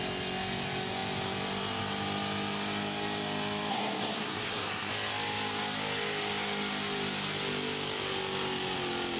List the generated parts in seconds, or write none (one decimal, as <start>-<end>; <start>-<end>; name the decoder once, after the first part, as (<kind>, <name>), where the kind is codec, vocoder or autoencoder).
3.7-4.9 (codec, SNAC)